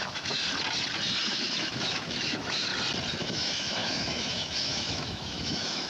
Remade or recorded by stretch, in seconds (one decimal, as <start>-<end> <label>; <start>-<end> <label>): 0.0-0.4 remade; 0.4-1.3 recorded; 1.3-2.7 remade; 2.7-3.2 recorded; 3.2-5.9 remade